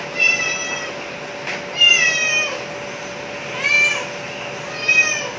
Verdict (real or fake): real